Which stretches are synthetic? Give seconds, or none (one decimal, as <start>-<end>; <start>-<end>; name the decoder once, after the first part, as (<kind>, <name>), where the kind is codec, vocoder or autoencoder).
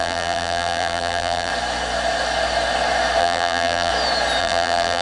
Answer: 0.0-1.5 (vocoder, BigVGAN v2); 3.2-3.9; 4.4-5.0